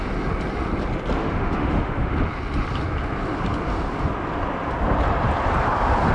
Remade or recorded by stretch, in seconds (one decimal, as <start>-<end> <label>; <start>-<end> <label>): 0.0-1.2 recorded; 1.2-2.1 remade; 2.1-6.1 recorded